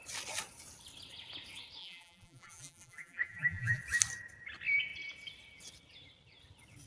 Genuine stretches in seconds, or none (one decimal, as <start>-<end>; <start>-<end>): 0.0-1.8; 3.8-6.9